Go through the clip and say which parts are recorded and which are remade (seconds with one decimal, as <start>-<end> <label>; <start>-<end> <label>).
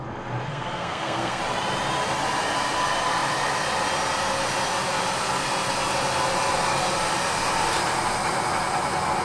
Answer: 0.0-0.5 recorded; 0.5-1.4 remade; 1.4-9.2 recorded